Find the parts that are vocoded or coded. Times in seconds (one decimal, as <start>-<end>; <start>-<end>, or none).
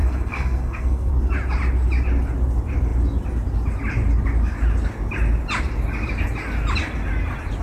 0.0-1.1